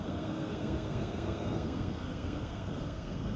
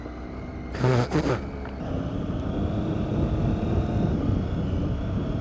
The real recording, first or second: second